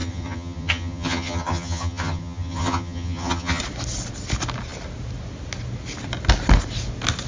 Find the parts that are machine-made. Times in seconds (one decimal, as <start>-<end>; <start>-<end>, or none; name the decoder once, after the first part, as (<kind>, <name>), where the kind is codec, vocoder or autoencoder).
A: 0.0-3.6 (vocoder, HiFi-GAN)

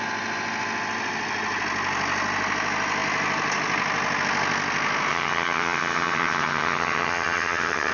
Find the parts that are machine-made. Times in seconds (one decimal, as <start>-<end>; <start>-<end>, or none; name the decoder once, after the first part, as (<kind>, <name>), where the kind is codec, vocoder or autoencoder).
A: 5.1-7.9 (vocoder, HiFi-GAN)

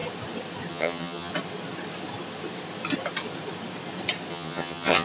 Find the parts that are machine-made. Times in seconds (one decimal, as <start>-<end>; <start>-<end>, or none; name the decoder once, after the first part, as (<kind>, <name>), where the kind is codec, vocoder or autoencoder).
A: 0.7-1.3 (vocoder, HiFi-GAN); 4.3-5.0

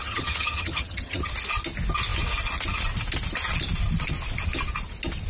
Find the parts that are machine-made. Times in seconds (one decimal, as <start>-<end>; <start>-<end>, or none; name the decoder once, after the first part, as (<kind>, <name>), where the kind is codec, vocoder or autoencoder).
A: 0.0-1.3 (vocoder, HiFi-GAN)

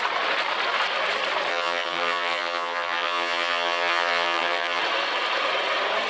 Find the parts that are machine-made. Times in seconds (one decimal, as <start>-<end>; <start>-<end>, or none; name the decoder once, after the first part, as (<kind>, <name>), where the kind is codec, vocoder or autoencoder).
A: 1.5-4.8 (vocoder, HiFi-GAN)